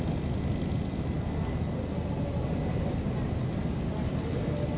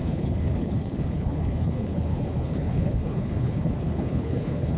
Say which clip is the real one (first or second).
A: first